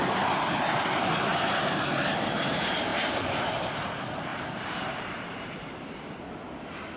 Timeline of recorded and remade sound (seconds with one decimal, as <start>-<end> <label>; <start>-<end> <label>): 0.0-2.9 recorded; 2.9-3.7 remade; 3.7-4.3 recorded; 4.3-6.2 remade; 6.2-7.0 recorded